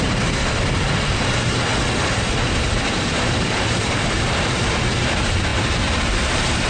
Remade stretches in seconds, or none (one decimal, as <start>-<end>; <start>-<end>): 0.0-1.7; 3.0-6.7